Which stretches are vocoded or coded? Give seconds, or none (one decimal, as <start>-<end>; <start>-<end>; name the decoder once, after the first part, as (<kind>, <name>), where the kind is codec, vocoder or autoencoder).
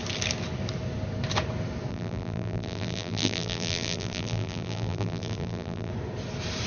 1.9-5.9 (vocoder, BigVGAN v2)